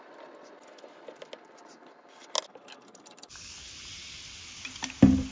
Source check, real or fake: real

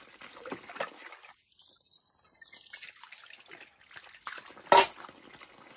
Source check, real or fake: real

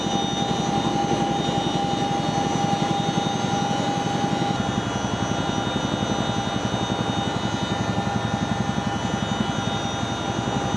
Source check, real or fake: real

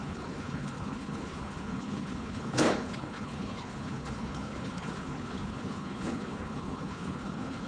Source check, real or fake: fake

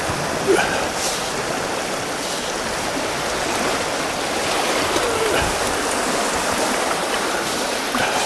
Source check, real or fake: real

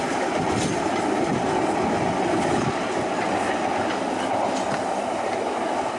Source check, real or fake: real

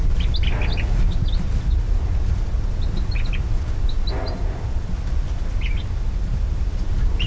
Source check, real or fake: real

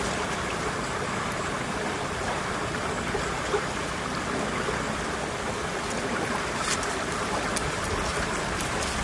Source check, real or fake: real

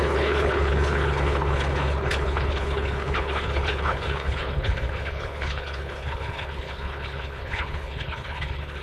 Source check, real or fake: fake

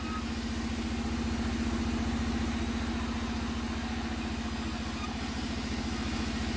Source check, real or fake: real